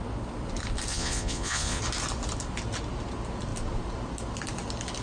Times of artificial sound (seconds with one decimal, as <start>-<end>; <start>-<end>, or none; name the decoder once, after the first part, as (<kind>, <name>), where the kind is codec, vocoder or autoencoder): 0.9-1.8 (vocoder, Vocos)